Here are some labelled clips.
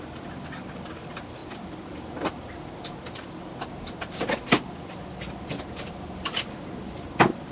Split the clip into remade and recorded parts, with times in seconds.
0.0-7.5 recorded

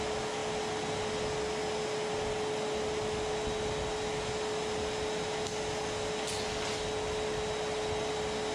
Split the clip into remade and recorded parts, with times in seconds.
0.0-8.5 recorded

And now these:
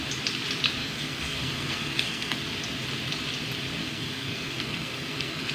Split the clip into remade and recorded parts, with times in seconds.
0.0-0.8 recorded; 0.8-2.4 remade; 2.4-3.8 recorded; 3.8-5.5 remade

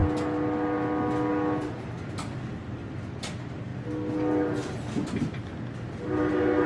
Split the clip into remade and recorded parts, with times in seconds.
0.0-6.7 recorded

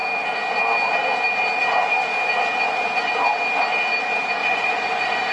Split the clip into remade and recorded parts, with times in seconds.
0.0-4.4 recorded; 4.4-5.3 remade

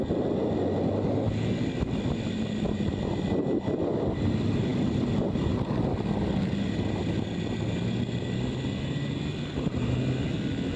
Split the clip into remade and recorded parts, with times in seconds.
0.0-10.8 recorded

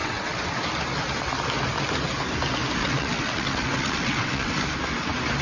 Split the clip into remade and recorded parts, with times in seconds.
0.0-0.6 remade; 0.6-2.8 recorded; 2.8-4.5 remade; 4.5-5.4 recorded